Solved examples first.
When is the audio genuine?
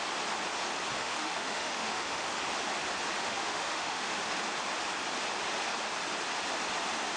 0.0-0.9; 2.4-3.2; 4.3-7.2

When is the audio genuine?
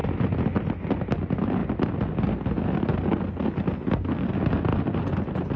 0.7-4.7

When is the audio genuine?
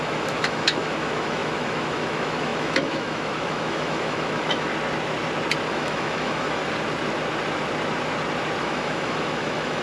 4.7-5.7; 6.6-8.6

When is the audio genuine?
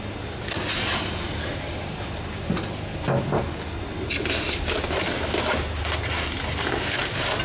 0.0-7.4